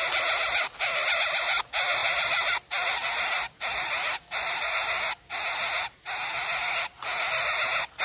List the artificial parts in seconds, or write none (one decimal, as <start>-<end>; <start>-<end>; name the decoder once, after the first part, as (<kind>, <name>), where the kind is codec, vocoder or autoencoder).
2.0-4.7 (vocoder, BigVGAN v2)